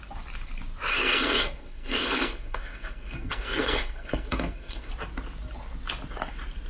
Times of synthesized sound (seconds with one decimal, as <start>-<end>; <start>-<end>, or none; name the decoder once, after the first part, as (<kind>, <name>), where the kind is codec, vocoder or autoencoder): 0.9-4.9 (codec, SNAC)